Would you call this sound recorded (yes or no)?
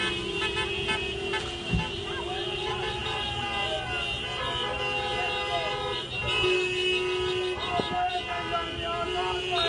yes